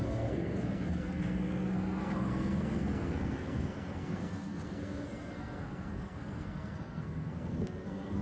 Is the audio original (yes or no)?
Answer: no